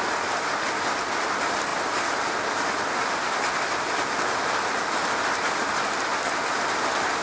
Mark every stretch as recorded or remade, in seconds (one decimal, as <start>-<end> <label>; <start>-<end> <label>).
0.0-7.2 recorded